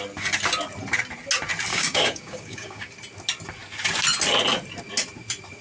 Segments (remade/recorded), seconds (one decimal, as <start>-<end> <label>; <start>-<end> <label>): 0.0-1.7 recorded; 1.7-2.9 remade; 2.9-5.6 recorded